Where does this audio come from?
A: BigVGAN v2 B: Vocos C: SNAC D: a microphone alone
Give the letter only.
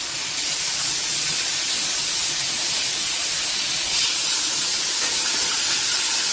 B